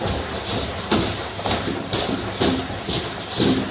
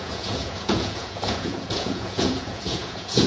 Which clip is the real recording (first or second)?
first